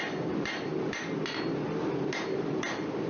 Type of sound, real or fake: real